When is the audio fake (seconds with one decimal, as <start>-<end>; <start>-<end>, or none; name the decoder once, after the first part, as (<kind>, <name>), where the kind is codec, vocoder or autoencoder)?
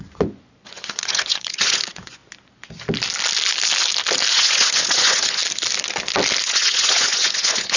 0.0-2.2 (vocoder, Vocos); 4.3-5.4; 6.4-7.8